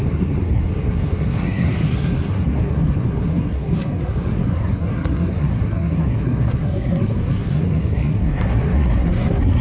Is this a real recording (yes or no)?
no